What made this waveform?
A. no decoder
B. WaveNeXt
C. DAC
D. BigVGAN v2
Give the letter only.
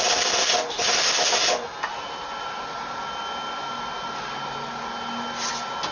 A